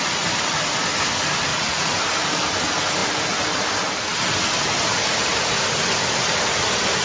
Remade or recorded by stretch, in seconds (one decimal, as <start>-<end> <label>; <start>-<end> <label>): 0.0-1.5 recorded; 1.5-2.0 remade; 2.0-7.0 recorded